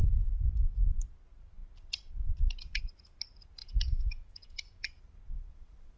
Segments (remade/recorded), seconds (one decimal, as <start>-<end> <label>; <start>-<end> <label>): 0.0-3.6 recorded; 3.6-5.0 remade; 5.0-6.0 recorded